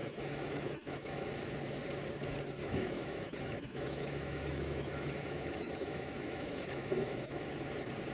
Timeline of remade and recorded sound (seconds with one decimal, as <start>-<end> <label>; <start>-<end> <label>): 0.0-1.3 remade; 1.3-2.6 recorded; 2.6-7.5 remade; 7.5-8.1 recorded

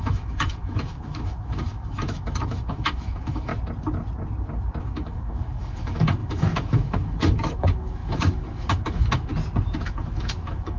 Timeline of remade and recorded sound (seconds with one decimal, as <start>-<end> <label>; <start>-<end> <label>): 0.0-3.5 remade; 3.5-4.8 recorded; 4.8-9.3 remade; 9.3-9.8 recorded; 9.8-10.8 remade

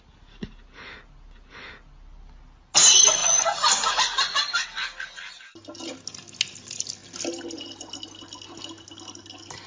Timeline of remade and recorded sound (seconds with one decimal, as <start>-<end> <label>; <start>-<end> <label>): 0.0-9.7 recorded